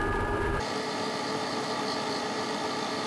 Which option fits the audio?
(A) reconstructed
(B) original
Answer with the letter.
A